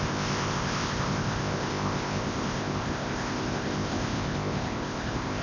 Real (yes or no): no